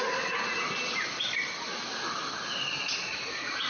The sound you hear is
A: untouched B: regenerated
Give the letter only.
A